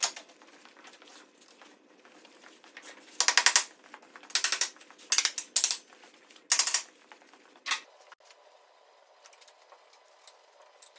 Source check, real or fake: real